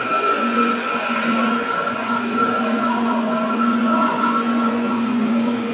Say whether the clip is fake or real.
fake